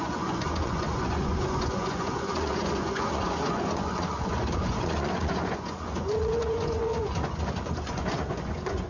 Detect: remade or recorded remade